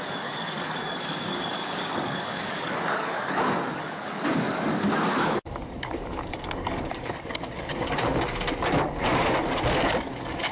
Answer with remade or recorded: remade